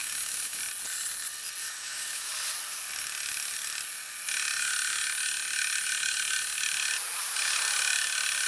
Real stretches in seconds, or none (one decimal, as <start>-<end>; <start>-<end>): 0.6-1.6; 2.3-8.5